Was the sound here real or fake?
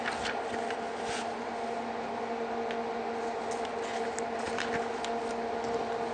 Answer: real